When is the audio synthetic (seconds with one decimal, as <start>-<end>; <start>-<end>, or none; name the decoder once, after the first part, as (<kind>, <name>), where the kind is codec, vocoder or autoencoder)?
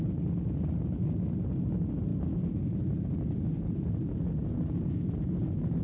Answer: none